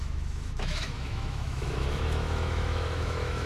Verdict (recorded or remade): remade